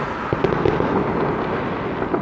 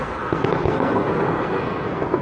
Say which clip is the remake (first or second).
second